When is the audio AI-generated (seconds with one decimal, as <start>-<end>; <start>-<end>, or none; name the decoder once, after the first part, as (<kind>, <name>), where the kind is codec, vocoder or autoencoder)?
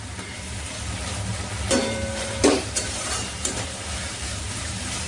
0.0-1.3 (vocoder, BigVGAN v2); 1.8-5.1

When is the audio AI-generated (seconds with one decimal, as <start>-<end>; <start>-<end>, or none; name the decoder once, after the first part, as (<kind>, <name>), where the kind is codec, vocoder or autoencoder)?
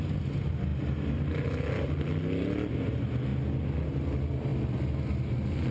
none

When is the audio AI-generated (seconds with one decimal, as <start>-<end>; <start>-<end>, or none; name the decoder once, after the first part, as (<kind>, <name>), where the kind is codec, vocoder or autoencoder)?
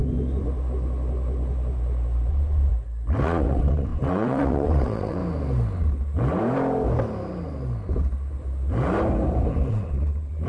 2.3-2.7 (vocoder, WaveNeXt); 3.2-5.2; 9.7-10.5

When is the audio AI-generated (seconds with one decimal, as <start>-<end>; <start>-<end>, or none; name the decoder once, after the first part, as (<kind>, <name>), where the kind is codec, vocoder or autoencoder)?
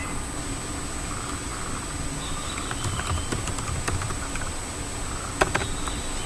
none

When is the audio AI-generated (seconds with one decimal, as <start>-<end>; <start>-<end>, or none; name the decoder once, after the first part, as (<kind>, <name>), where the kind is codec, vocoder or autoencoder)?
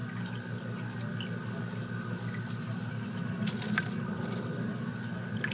none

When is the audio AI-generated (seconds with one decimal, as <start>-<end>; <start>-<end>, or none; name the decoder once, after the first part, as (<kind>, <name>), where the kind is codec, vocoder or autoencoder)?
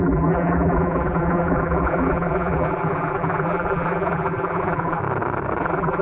0.0-5.0 (vocoder, BigVGAN v2); 5.6-6.0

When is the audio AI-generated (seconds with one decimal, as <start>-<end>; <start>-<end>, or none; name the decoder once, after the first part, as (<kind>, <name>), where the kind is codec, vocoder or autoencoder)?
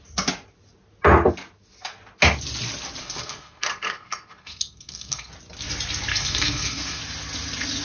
3.0-5.3 (codec, SNAC); 6.1-7.0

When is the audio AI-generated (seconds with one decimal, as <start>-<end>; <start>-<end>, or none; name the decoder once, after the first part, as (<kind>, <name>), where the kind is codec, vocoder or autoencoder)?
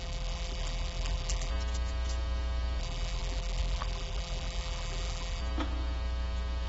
0.0-1.5 (vocoder, BigVGAN v2); 2.8-5.4